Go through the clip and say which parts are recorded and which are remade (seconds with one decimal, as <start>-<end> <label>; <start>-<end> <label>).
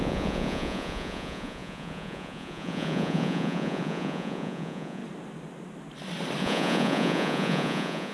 0.0-5.0 remade; 5.0-6.4 recorded; 6.4-8.1 remade